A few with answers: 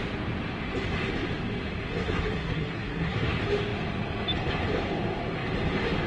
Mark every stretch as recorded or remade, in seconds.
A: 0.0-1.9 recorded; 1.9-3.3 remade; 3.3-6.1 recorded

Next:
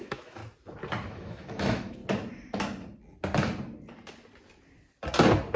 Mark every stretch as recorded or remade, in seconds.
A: 0.0-0.4 remade; 0.4-1.1 recorded; 1.1-2.0 remade; 2.0-5.6 recorded

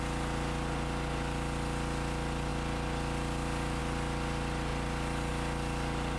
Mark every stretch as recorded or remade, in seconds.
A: 0.0-6.2 recorded

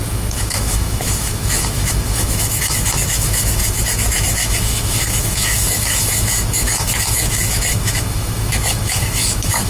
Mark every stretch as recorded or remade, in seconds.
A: 0.0-9.7 remade

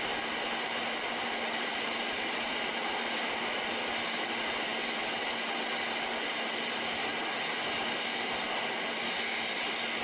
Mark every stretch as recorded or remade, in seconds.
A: 0.0-10.0 recorded

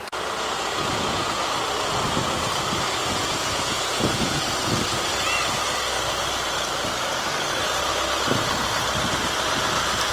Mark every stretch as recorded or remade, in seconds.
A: 0.0-1.4 remade; 1.4-3.2 recorded; 3.2-5.1 remade; 5.1-10.1 recorded

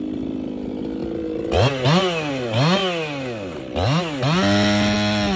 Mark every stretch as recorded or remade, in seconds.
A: 0.0-5.4 recorded